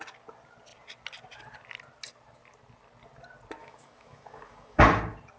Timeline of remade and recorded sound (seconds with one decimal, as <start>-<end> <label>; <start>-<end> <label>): 0.0-3.6 recorded; 3.6-4.8 remade; 4.8-5.4 recorded